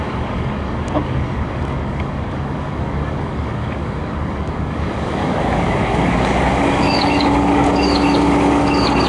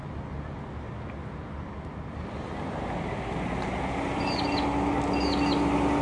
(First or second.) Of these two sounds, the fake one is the first